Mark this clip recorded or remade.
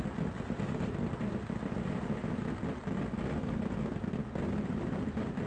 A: recorded